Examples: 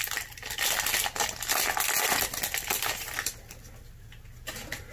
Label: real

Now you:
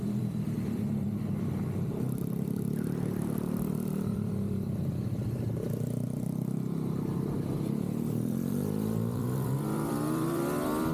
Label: fake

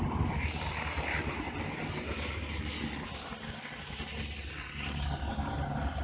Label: real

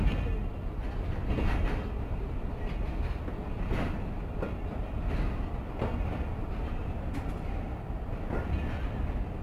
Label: real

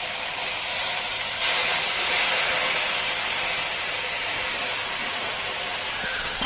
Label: real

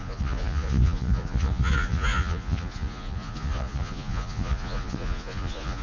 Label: fake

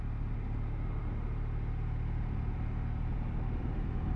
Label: real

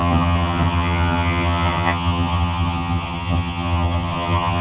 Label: fake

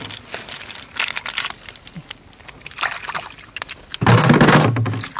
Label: real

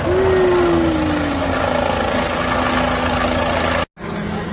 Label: real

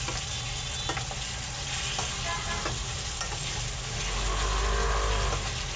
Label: real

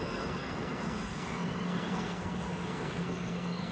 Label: fake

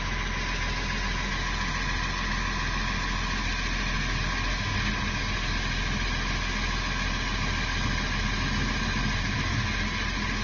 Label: real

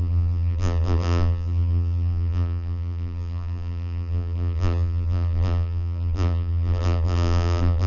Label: fake